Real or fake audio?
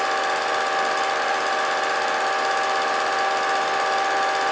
real